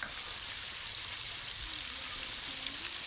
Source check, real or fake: real